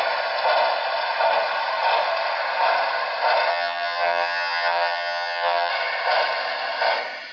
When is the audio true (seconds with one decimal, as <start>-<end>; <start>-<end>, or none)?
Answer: 0.0-3.5; 5.7-7.3